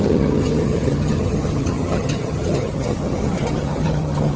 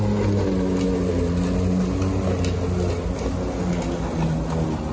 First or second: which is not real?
first